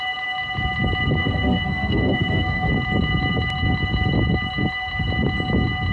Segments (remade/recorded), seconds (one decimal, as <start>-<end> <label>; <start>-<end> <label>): 0.0-1.2 recorded; 1.2-2.7 remade; 2.7-5.9 recorded